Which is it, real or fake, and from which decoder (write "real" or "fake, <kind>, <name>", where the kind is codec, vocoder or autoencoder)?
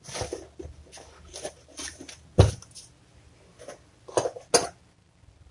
real